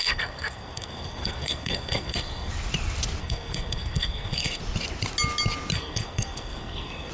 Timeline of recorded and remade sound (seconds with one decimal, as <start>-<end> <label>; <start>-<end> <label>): 0.0-2.5 remade; 2.5-3.2 recorded; 3.2-4.6 remade; 4.6-5.7 recorded; 5.7-7.1 remade

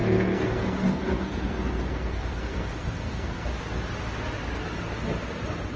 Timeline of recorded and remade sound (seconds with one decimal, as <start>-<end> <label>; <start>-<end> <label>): 0.0-3.5 remade; 3.5-5.8 recorded

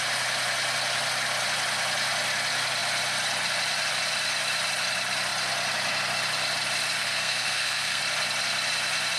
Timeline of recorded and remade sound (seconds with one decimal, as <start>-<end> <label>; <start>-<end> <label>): 0.0-7.0 recorded; 7.0-8.0 remade; 8.0-9.2 recorded

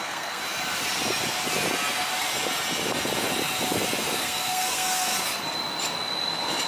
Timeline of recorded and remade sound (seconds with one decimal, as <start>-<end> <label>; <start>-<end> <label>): 0.0-0.4 remade; 0.4-4.2 recorded; 4.2-5.1 remade; 5.1-6.7 recorded

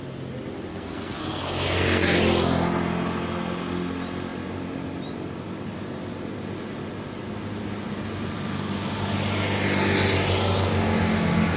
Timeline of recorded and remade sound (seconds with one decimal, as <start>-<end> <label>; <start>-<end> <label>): 0.0-0.7 recorded; 0.7-2.2 remade; 2.2-11.6 recorded

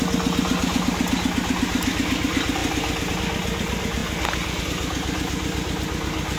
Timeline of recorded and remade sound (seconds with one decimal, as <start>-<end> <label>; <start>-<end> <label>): 0.0-6.4 recorded